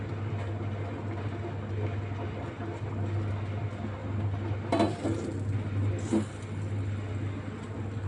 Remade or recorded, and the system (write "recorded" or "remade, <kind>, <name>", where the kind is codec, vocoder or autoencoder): recorded